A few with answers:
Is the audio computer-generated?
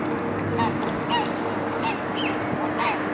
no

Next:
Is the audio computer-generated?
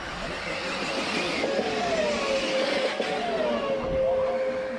no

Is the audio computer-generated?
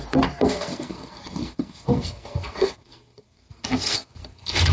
yes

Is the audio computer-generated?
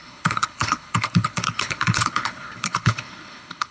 yes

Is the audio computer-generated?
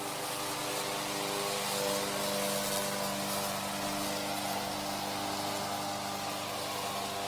no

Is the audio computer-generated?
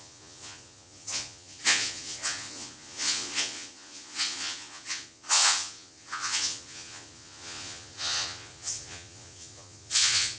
yes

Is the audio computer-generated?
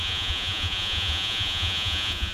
yes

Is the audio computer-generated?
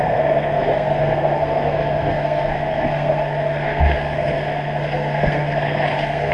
yes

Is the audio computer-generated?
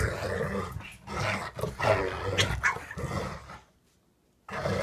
no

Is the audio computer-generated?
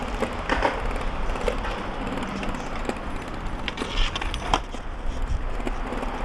no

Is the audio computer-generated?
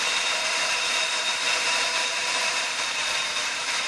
yes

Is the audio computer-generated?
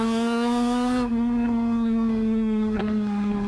yes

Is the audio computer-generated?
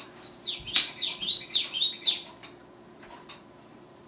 yes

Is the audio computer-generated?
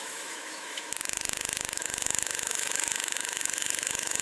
yes